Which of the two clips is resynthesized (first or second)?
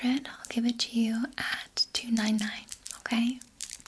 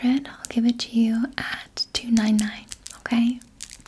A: first